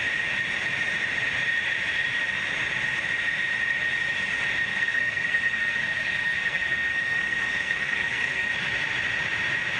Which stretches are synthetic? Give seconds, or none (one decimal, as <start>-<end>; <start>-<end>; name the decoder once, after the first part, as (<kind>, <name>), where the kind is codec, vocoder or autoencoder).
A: 4.7-8.5 (codec, SNAC)